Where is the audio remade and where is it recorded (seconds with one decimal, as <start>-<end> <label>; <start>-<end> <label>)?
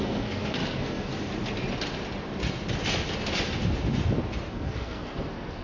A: 0.0-1.1 remade; 1.1-4.5 recorded; 4.5-5.6 remade